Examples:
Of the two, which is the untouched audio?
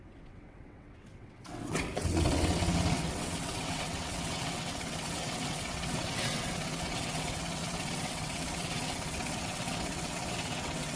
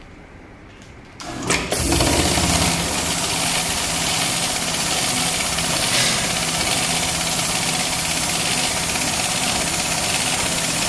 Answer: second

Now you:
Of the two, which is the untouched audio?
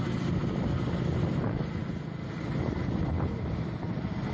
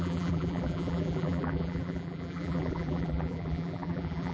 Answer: first